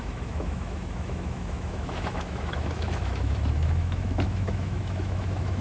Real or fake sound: fake